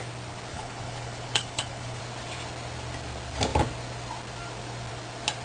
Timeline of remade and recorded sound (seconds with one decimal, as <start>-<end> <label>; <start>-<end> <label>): 0.0-0.5 recorded; 0.5-2.0 remade; 2.0-5.4 recorded

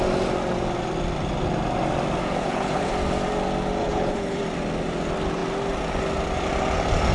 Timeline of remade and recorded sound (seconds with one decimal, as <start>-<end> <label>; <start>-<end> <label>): 0.0-2.4 recorded; 2.4-2.9 remade; 2.9-3.8 recorded; 3.8-4.4 remade; 4.4-7.1 recorded